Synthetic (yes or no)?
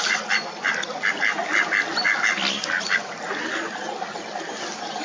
no